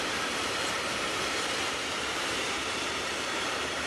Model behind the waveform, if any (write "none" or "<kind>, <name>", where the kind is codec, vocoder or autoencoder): vocoder, BigVGAN v2